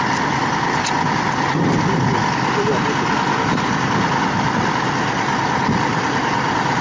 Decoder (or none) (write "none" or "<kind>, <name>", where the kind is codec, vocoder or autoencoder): none